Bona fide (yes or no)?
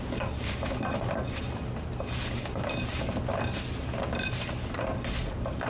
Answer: yes